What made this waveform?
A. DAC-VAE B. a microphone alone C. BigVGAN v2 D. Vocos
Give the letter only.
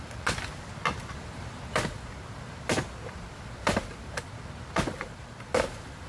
B